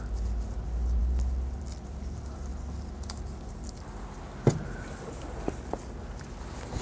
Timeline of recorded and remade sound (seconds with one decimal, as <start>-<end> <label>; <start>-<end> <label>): 0.0-6.8 recorded